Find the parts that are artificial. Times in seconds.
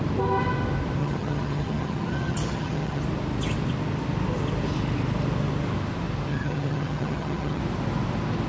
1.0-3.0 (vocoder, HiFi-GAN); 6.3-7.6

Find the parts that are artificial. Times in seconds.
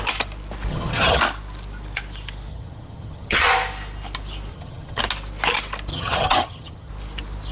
0.7-1.2 (vocoder, HiFi-GAN); 2.5-3.5; 4.5-5.0; 5.9-6.9